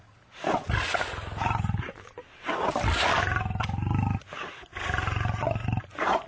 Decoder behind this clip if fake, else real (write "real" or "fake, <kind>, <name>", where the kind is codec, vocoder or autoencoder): real